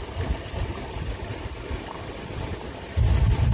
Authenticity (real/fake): fake